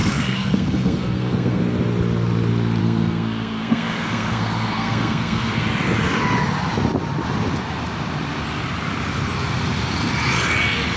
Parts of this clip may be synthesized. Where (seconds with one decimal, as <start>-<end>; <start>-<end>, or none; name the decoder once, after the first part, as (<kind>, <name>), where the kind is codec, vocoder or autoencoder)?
0.0-1.6 (codec, SNAC); 2.8-5.6